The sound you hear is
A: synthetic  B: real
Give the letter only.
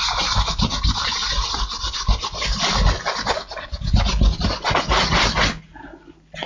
B